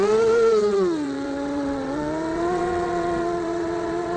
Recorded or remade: remade